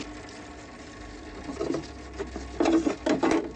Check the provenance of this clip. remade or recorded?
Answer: recorded